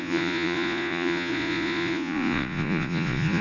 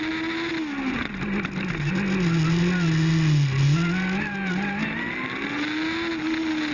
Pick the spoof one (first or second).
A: first